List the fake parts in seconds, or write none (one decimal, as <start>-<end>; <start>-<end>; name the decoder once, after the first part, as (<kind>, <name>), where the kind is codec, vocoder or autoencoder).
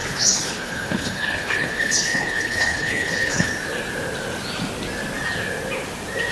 0.0-3.5 (codec, HILCodec)